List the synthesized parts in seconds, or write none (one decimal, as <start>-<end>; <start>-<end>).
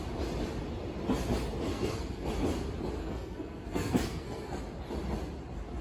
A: 1.7-2.3; 3.0-4.6